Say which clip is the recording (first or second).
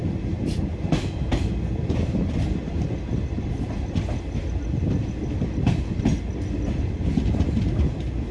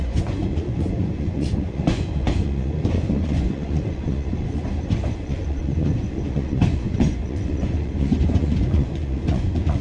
first